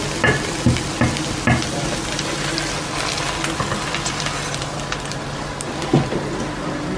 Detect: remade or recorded recorded